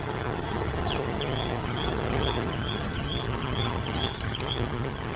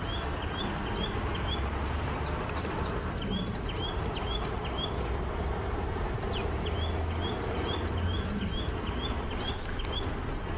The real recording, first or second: second